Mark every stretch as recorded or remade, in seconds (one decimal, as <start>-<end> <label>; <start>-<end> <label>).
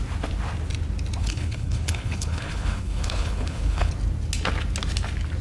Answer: 0.0-1.2 recorded; 1.2-3.9 remade; 3.9-5.4 recorded